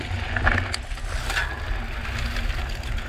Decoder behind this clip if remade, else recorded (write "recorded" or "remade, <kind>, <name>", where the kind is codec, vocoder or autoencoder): recorded